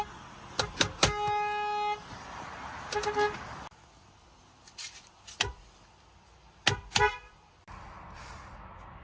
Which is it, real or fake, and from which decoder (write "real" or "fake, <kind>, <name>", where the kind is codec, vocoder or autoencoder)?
real